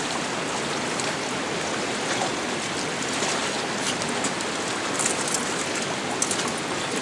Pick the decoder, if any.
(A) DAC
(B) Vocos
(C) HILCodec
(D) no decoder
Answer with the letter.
D